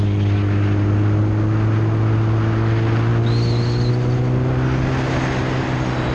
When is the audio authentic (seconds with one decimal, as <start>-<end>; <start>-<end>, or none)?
0.0-6.1